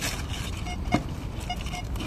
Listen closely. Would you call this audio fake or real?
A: fake